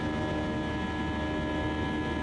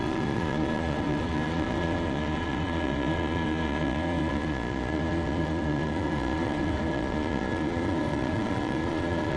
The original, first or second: first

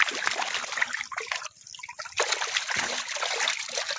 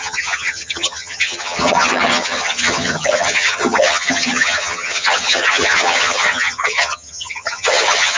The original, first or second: first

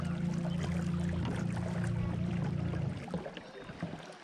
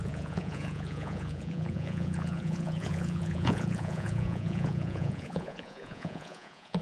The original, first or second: first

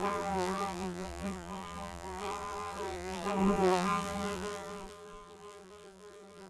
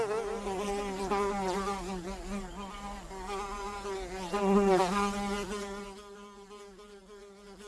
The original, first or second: second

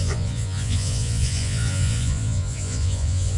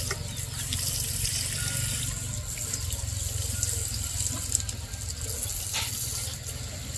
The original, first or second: second